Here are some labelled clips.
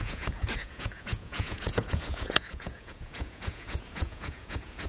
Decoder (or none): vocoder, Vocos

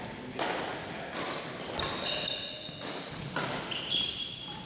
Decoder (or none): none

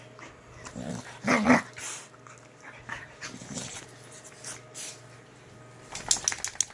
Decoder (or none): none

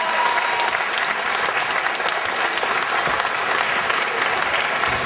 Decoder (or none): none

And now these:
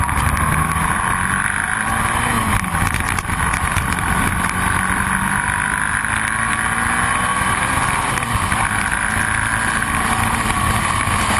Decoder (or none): none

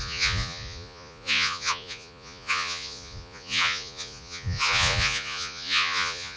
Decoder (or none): vocoder, Vocos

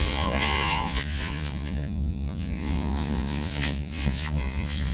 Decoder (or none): vocoder, Vocos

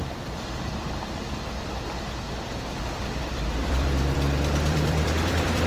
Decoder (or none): vocoder, BigVGAN v2